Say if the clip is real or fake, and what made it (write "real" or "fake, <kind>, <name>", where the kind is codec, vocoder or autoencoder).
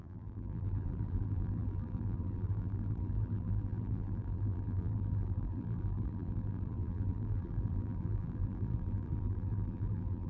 fake, vocoder, BigVGAN v2